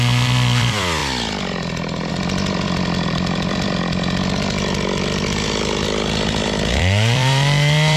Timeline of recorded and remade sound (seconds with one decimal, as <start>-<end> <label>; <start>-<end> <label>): 0.0-1.0 remade; 1.0-2.1 recorded; 2.1-8.0 remade